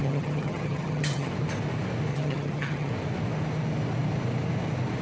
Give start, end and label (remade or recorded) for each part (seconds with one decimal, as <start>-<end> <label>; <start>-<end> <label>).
0.0-1.3 remade; 1.3-2.1 recorded; 2.1-2.9 remade; 2.9-5.0 recorded

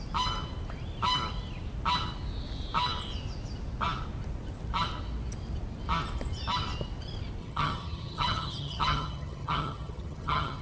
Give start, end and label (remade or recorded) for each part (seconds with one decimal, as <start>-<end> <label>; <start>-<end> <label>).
0.0-7.4 recorded; 7.4-10.6 remade